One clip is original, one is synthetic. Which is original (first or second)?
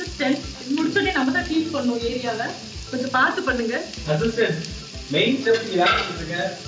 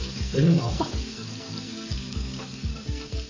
first